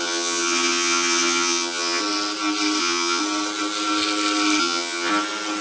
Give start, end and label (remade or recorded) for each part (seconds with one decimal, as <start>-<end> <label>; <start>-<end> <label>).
0.0-2.0 remade; 2.0-2.8 recorded; 2.8-3.2 remade; 3.2-4.6 recorded; 4.6-5.1 remade; 5.1-5.6 recorded